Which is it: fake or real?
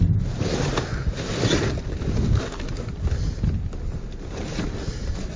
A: real